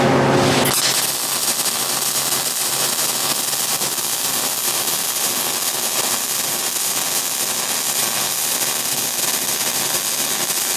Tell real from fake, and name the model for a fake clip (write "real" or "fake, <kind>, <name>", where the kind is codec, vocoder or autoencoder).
real